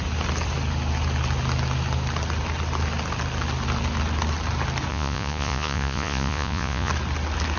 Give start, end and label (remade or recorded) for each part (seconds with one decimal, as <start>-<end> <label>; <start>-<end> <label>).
0.0-4.9 recorded; 4.9-6.9 remade; 6.9-7.6 recorded